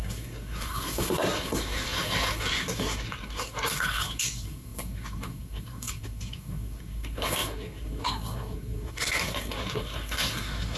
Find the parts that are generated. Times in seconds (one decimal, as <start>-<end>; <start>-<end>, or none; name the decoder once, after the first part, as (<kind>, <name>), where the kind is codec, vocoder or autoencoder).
0.0-10.8 (codec, SNAC)